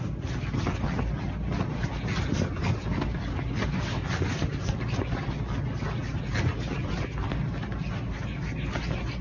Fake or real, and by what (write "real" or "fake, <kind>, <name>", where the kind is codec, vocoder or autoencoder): real